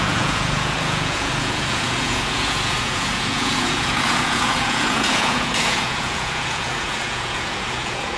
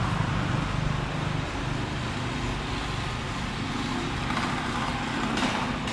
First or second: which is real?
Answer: second